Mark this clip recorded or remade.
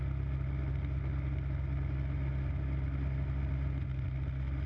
recorded